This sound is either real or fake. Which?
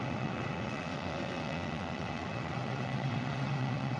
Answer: fake